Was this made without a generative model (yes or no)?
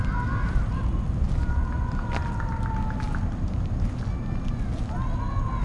yes